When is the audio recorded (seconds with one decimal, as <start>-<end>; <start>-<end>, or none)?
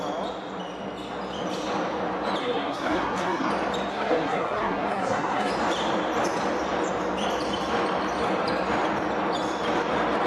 0.0-2.4; 3.5-3.9; 5.5-10.3